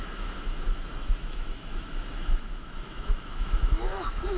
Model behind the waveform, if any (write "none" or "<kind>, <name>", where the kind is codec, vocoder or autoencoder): autoencoder, DAC-VAE